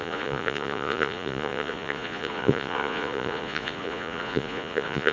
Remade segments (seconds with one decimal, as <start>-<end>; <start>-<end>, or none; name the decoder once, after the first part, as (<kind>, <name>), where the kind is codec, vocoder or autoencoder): 0.0-5.1 (vocoder, Vocos)